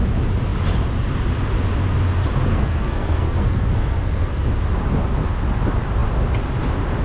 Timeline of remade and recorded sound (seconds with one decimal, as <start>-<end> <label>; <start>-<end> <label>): 0.0-2.5 recorded; 2.5-4.5 remade; 4.5-7.0 recorded